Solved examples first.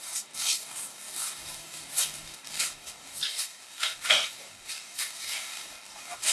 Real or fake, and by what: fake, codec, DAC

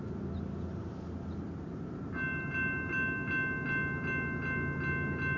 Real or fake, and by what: real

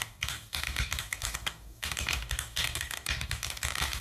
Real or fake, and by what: fake, codec, DAC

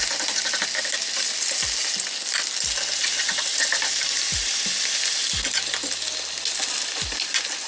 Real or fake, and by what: real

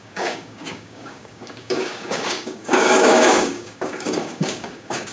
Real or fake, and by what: fake, codec, DAC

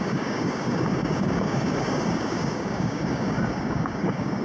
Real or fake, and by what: fake, codec, DAC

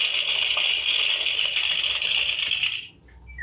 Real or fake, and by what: real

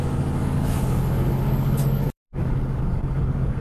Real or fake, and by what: fake, codec, DAC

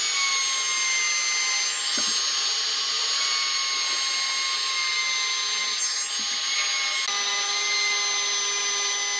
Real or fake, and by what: real